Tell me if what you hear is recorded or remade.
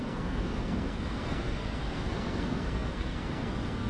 remade